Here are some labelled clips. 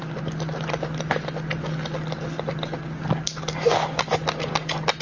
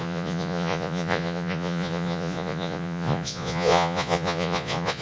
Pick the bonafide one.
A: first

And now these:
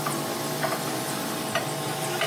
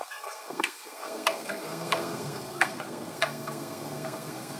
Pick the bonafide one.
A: first